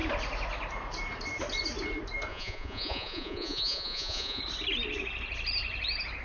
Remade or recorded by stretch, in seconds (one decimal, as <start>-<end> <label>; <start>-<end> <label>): 0.0-2.3 recorded; 2.3-4.4 remade; 4.4-6.2 recorded